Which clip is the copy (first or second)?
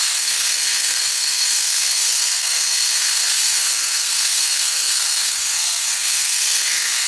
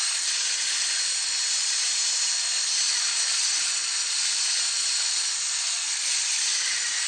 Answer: first